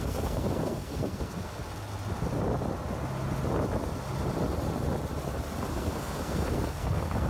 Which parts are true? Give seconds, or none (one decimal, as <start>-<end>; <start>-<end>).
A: 1.6-5.7